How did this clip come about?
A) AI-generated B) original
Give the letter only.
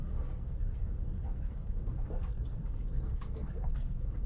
A